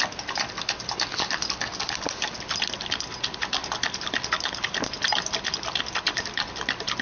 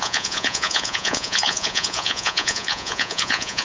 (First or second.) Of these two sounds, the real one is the first